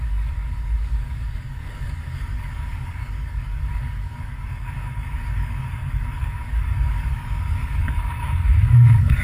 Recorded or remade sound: remade